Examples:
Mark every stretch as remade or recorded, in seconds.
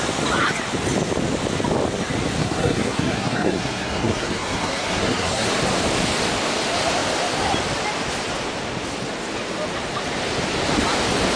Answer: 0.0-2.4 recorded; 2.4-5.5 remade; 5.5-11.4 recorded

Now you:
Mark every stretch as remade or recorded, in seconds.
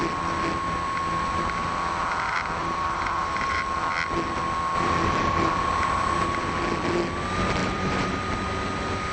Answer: 0.0-2.6 recorded; 2.6-3.6 remade; 3.6-7.6 recorded; 7.6-8.3 remade; 8.3-9.1 recorded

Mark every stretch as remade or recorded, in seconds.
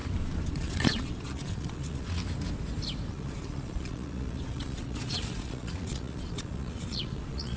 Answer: 0.0-0.5 recorded; 0.5-2.2 remade; 2.2-3.1 recorded; 3.1-7.6 remade